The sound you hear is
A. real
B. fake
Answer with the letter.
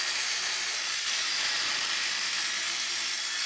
A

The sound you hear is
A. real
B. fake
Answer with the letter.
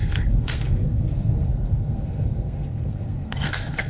B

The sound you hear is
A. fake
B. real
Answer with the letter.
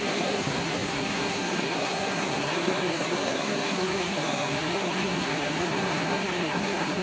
A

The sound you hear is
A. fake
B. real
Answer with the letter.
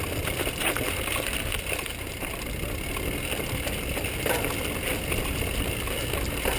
B